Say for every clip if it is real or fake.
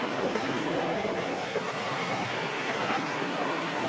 fake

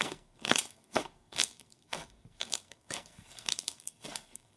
fake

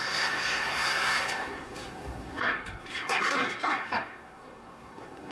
fake